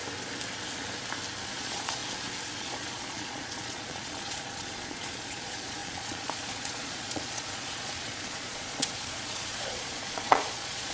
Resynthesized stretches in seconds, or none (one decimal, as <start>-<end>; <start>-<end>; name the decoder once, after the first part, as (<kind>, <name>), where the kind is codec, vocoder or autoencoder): 1.4-2.0 (vocoder, Vocos); 2.6-10.9